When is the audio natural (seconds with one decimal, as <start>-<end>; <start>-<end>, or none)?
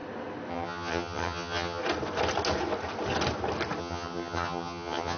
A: 0.0-0.5; 1.8-3.8